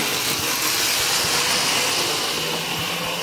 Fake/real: real